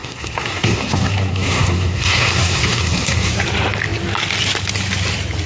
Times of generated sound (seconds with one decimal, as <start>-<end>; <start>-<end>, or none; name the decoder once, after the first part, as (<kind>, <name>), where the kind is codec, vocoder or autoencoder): 0.0-3.3 (codec, SNAC)